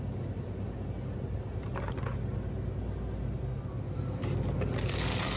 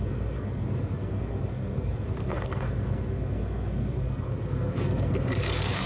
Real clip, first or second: first